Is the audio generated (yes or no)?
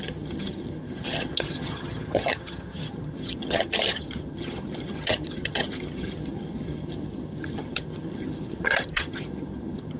yes